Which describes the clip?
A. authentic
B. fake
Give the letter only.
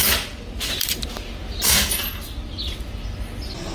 A